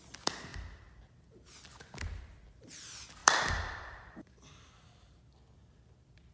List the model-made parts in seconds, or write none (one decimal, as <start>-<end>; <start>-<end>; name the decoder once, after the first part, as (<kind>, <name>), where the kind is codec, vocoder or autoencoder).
3.2-4.7 (vocoder, BigVGAN v2)